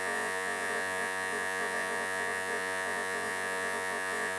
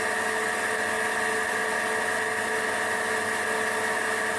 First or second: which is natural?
second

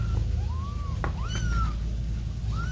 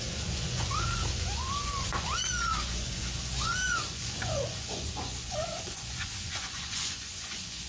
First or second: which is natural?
first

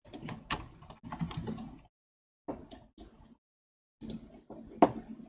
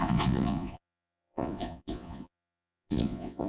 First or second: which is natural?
first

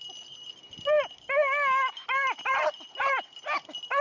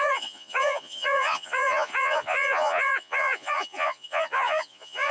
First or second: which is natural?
first